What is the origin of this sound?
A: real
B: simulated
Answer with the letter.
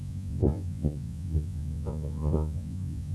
B